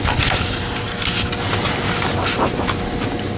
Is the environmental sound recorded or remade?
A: recorded